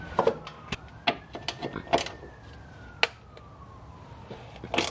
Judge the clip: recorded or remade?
recorded